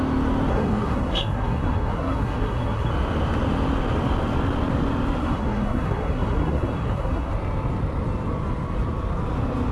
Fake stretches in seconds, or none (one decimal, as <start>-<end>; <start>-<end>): 0.5-2.9; 5.2-7.3